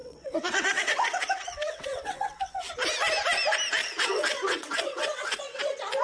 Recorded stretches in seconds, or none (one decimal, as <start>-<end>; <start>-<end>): 2.7-3.8; 5.6-6.0